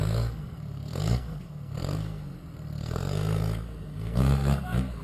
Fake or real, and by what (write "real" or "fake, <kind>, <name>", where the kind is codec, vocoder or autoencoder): fake, codec, SNAC